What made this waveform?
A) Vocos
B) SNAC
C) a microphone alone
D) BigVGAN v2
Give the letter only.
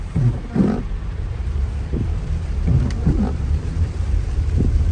D